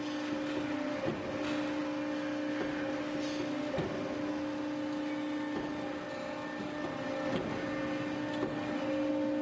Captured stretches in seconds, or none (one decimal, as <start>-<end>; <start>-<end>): 0.0-9.4